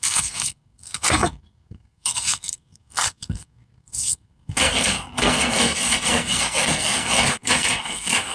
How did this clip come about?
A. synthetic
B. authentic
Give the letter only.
A